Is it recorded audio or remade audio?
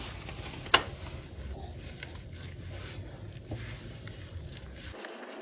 recorded